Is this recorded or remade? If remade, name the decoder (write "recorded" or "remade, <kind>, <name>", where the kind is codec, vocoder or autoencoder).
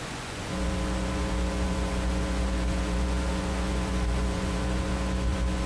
remade, vocoder, Vocos